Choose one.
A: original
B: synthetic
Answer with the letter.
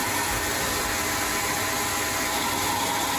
A